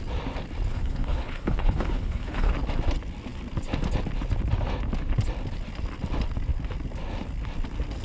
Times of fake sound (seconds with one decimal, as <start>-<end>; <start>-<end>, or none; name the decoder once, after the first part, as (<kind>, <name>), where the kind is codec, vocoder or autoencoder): 0.7-2.5 (codec, HILCodec)